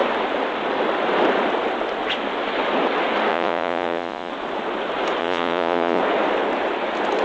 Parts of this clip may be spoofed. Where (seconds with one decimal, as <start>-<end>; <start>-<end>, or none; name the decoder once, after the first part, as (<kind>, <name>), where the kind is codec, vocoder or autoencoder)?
3.3-4.3 (vocoder, Vocos); 5.2-6.0